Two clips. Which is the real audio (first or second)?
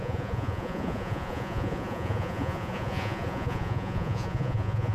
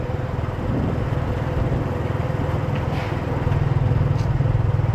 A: second